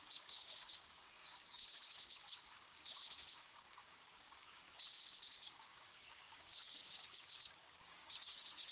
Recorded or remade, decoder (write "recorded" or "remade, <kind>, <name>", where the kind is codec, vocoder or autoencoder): remade, codec, DAC